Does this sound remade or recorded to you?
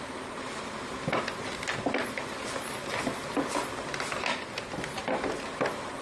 recorded